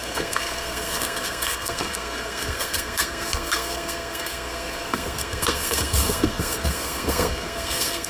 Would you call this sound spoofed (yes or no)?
yes